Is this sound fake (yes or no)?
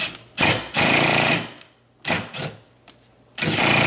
no